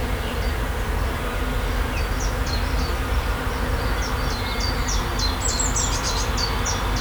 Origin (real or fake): real